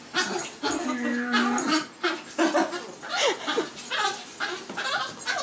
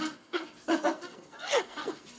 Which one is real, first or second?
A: first